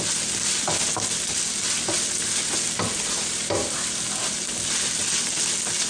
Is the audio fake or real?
real